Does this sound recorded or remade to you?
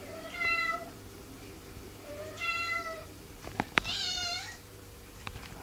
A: remade